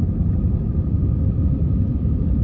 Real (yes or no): no